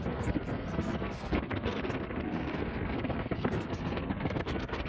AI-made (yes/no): yes